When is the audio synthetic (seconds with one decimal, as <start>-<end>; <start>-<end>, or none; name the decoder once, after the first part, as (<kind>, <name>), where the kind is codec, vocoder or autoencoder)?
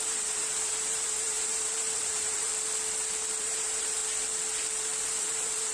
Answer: 0.0-2.5 (vocoder, BigVGAN v2); 3.4-4.0; 5.0-5.7